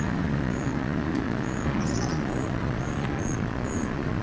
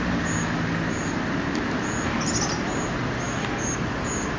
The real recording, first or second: second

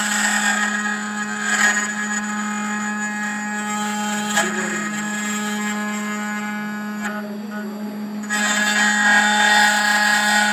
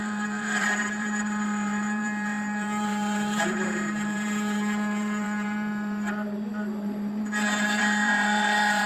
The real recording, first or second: first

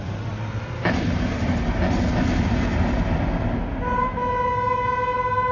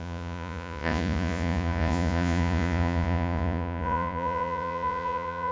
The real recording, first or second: first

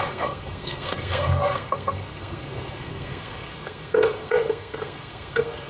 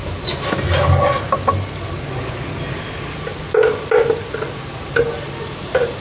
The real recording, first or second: second